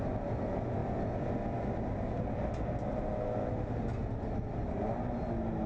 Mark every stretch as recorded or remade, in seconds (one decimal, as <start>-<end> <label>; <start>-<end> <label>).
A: 0.0-5.7 recorded